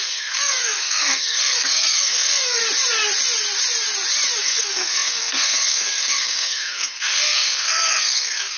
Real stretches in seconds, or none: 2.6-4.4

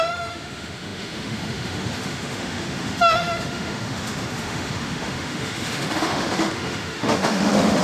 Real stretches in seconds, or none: none

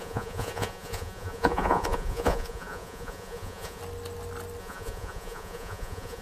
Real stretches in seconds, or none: 3.8-4.6

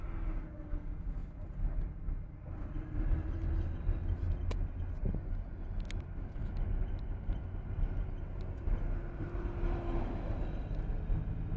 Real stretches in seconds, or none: 0.0-11.6

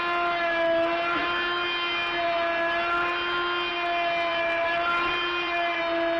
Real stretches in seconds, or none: 0.0-4.3; 5.8-6.2

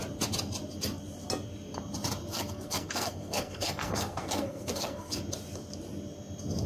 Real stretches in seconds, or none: 0.0-2.3; 5.2-6.7

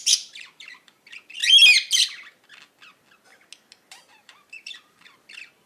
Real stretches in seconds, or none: 1.4-4.1